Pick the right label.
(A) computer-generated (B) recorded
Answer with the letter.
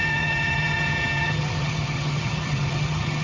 A